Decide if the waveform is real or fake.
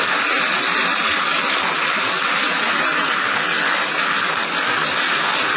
real